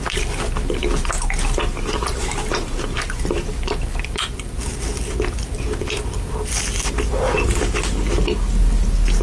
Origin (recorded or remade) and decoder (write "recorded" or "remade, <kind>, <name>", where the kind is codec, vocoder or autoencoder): recorded